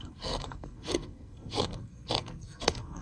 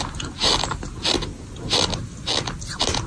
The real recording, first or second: second